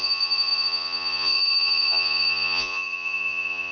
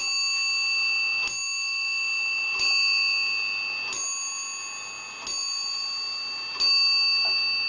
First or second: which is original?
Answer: second